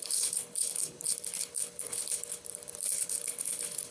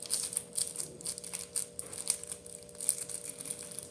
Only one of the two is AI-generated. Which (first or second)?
first